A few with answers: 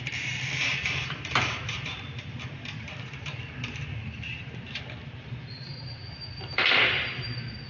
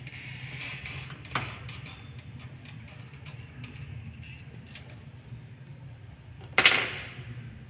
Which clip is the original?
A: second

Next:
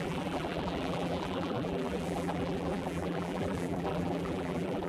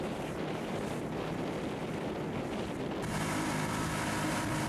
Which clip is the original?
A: second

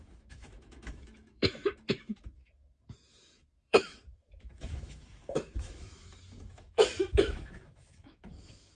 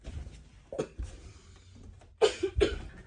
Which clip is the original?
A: second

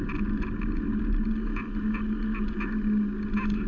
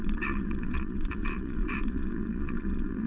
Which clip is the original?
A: first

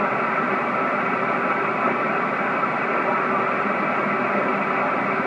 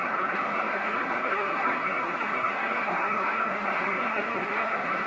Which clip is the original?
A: first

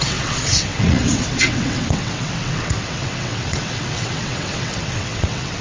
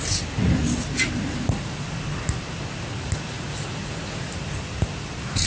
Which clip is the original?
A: second